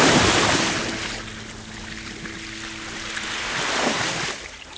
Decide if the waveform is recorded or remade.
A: recorded